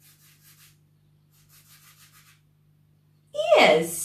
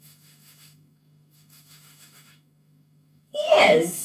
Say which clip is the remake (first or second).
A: second